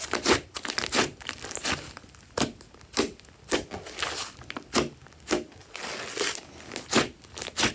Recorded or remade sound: recorded